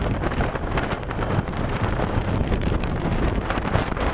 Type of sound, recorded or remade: remade